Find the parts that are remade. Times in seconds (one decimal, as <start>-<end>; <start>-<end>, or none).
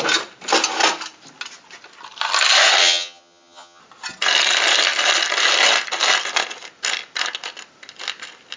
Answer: 2.8-3.8